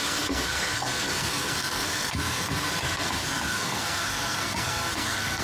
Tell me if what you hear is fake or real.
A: fake